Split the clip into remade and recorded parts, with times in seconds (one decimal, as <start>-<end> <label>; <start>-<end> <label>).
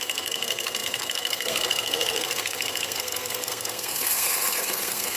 0.0-5.2 remade